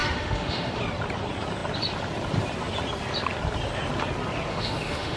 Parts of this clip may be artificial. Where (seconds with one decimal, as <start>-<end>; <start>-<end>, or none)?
0.0-0.8; 4.5-5.2

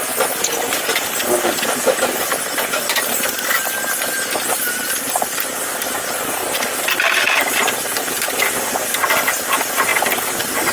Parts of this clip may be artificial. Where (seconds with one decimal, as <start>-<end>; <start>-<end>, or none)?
2.3-3.8; 9.9-10.7

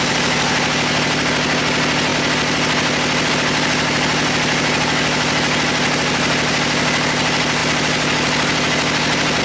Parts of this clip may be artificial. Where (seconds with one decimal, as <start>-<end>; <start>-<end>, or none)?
none

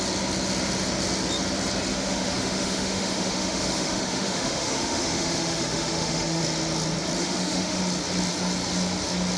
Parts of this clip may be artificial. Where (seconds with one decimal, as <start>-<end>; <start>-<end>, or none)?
1.9-6.4; 7.2-7.8

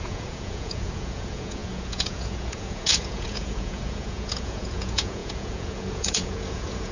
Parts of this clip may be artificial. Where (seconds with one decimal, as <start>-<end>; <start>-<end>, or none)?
0.0-6.9

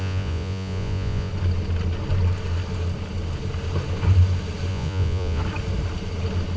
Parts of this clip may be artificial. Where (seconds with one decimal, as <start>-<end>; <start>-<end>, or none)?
0.0-1.3; 4.7-5.4

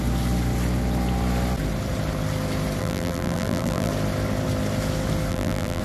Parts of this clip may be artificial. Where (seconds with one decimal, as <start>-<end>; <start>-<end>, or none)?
2.8-3.9; 5.3-5.8